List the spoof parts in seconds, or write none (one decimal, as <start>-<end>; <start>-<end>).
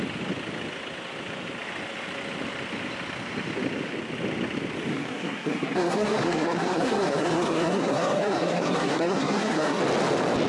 4.9-9.8